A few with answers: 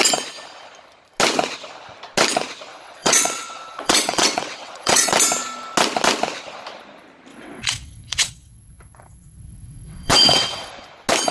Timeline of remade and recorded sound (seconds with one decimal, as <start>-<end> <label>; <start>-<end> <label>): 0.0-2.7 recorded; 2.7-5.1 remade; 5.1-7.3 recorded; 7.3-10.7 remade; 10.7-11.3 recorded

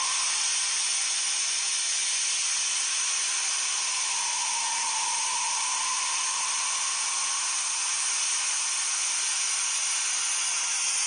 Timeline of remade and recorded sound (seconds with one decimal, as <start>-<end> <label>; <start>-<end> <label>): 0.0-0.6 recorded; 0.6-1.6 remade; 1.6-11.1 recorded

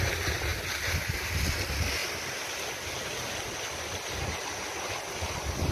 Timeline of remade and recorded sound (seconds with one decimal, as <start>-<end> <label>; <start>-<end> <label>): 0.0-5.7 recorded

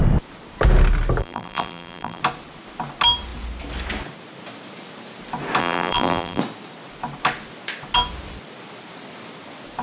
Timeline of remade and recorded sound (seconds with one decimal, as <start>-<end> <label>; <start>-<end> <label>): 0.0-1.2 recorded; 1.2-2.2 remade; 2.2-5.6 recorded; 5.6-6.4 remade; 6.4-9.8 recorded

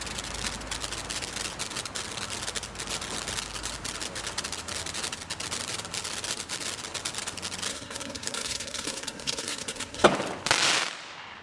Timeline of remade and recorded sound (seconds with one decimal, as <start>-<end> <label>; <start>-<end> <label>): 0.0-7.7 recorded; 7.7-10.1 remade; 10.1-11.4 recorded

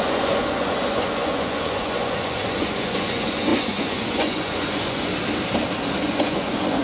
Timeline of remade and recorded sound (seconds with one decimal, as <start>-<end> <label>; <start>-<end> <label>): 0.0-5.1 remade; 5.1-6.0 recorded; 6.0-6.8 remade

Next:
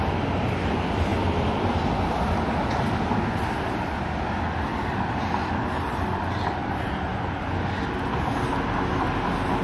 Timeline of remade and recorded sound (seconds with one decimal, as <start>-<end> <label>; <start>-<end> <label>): 0.0-9.6 recorded